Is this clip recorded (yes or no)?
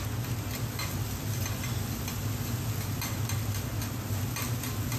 yes